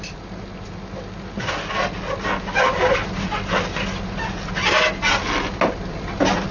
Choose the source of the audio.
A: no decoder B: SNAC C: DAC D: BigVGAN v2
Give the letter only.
A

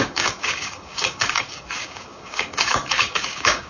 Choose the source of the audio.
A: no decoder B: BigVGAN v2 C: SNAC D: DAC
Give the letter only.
D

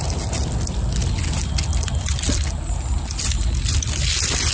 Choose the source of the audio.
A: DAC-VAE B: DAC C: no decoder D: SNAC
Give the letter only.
C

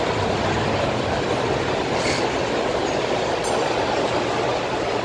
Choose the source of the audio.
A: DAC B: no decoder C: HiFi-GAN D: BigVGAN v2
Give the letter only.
B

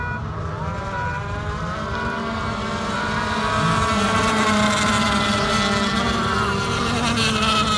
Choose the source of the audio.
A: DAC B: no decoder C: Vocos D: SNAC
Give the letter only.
B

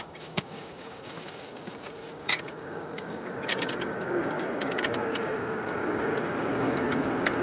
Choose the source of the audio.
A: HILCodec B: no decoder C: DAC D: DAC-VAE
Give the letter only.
C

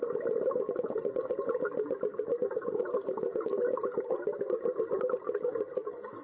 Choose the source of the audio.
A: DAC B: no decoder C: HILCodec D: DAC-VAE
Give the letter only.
B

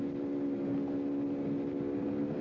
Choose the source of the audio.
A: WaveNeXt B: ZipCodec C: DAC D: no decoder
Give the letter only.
D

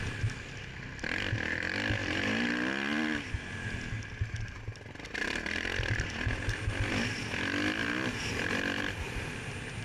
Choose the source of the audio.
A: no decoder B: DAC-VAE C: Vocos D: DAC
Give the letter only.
A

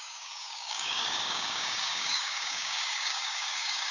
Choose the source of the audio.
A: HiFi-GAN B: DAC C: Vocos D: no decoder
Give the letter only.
B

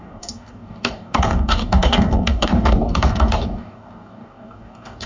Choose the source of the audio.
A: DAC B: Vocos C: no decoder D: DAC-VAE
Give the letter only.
A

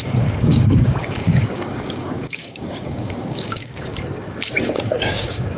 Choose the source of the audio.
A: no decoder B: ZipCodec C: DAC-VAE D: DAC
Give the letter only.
D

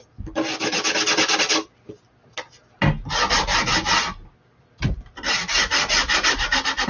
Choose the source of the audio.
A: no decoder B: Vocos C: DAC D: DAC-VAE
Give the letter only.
A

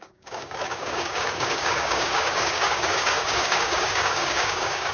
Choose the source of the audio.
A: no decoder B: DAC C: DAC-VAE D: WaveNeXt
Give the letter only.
B